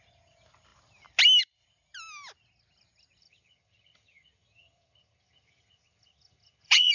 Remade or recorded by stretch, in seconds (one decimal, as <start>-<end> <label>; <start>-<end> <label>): 0.0-3.2 recorded; 3.2-6.9 remade